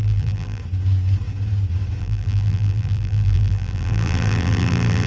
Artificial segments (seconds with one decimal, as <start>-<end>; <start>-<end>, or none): 0.0-0.6; 2.0-5.1